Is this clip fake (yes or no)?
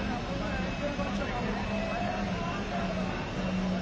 no